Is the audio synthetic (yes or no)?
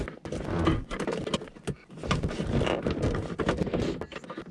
no